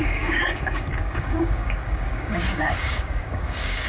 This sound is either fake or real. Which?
fake